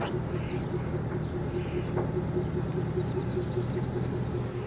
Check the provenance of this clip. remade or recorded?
remade